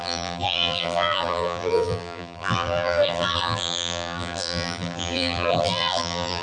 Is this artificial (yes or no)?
yes